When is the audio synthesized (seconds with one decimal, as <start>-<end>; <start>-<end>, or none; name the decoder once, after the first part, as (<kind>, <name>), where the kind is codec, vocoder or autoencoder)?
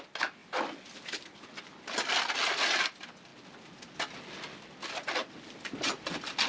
none